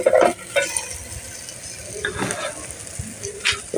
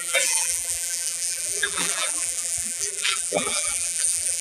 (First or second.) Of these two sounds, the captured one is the first